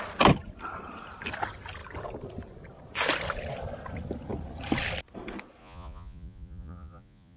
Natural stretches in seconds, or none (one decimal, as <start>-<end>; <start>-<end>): 0.0-5.6

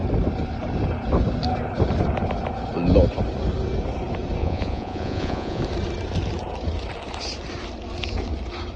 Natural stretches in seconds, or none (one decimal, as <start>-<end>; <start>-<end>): 0.0-4.4; 5.6-8.8

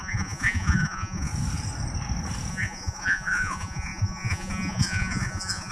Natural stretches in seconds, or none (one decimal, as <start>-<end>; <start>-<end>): 1.3-2.5

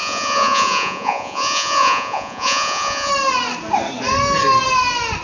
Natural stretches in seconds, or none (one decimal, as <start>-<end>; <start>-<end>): 3.1-5.2

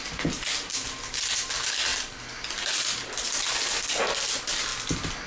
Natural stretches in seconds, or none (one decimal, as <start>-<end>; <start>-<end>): 0.0-5.3